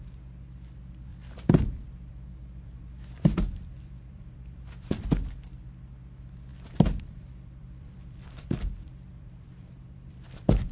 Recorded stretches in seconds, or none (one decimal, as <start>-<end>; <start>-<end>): 0.0-1.1; 5.1-6.5